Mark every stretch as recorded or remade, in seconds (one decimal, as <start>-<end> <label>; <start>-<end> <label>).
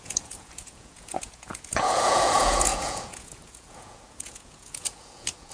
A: 0.0-5.5 remade